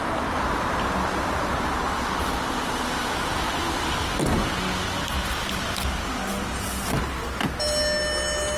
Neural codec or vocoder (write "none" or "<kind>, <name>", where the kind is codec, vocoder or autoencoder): none